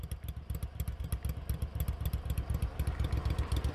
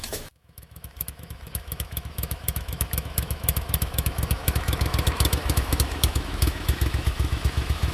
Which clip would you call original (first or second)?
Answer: first